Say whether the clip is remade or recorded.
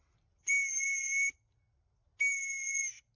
recorded